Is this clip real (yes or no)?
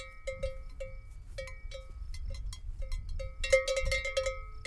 yes